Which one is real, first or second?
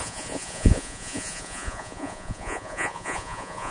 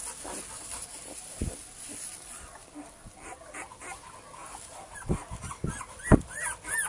second